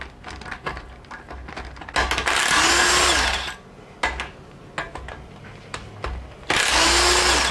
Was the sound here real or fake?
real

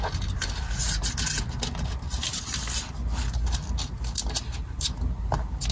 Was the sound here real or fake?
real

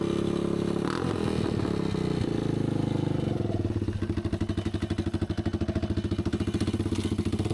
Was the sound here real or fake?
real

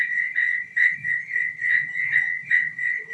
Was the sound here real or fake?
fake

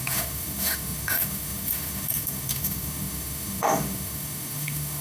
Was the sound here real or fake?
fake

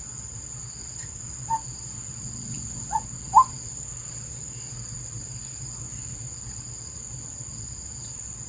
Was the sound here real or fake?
fake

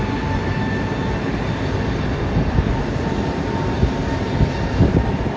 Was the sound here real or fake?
real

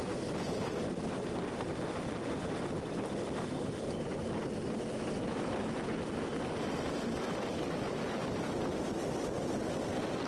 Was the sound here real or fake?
real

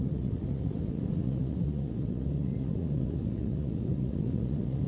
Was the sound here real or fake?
fake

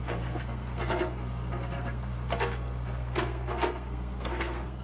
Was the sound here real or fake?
fake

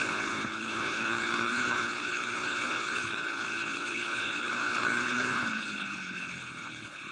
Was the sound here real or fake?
fake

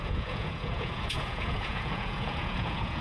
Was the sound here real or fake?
fake